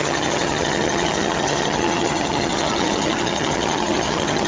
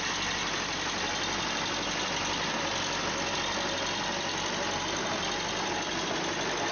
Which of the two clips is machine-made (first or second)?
first